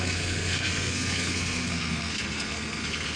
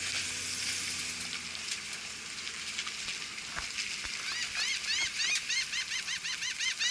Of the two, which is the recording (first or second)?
second